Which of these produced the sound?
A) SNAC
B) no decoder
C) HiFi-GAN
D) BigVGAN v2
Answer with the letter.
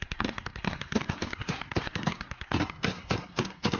A